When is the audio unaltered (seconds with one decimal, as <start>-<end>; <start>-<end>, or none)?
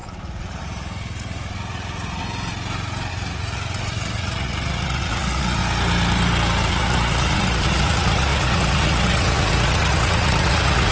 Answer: 2.2-3.1; 5.6-6.7